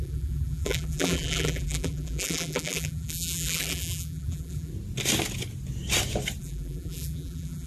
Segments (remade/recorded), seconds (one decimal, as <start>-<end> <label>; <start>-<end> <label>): 0.0-4.7 remade; 4.7-6.4 recorded; 6.4-7.7 remade